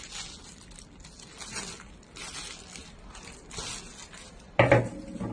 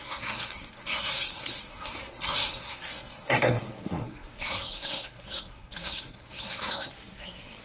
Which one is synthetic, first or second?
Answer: second